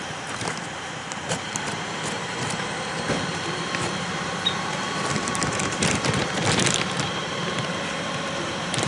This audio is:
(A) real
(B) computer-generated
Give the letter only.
B